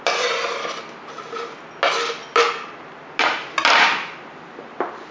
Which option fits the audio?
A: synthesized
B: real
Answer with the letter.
B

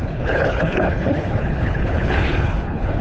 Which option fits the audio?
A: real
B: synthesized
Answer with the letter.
B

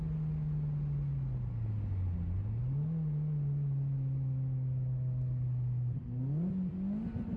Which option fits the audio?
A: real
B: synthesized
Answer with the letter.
A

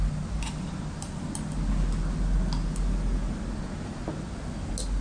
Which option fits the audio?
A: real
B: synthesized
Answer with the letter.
A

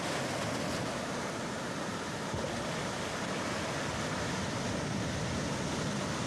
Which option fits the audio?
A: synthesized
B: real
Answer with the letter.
B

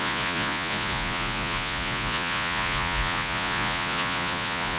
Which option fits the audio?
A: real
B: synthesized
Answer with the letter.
B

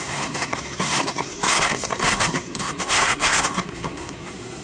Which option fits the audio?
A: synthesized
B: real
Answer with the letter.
A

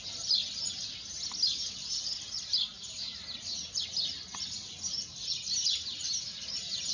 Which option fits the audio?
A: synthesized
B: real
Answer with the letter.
B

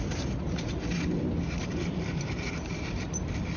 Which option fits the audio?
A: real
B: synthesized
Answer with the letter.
B